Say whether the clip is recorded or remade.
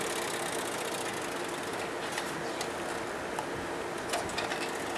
recorded